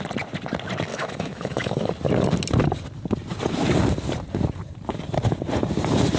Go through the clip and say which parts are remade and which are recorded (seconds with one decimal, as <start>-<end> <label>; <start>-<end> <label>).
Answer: 0.0-0.9 recorded; 0.9-1.9 remade; 1.9-6.2 recorded